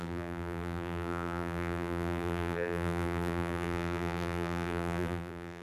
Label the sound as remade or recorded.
remade